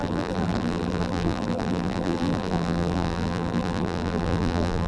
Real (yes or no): no